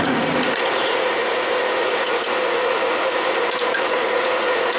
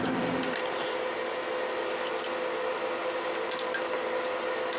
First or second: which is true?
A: second